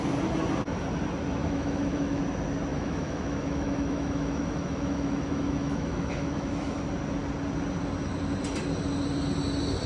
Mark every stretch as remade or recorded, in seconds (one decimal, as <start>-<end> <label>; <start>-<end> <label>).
0.0-1.4 recorded; 1.4-2.2 remade; 2.2-2.7 recorded; 2.7-6.8 remade; 6.8-9.9 recorded